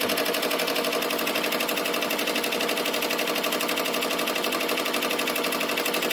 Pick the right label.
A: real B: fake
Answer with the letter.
A